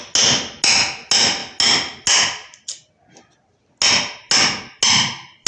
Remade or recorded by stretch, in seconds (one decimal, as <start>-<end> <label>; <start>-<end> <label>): 0.0-5.5 recorded